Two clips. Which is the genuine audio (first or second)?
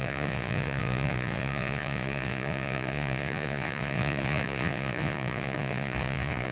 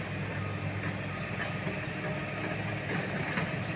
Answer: second